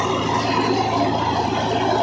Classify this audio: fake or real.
real